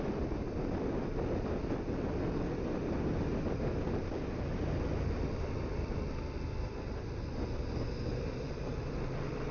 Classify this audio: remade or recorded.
recorded